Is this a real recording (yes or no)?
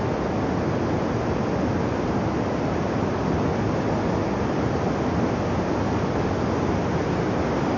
yes